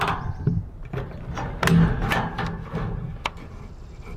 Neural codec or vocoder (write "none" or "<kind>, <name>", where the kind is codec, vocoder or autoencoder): none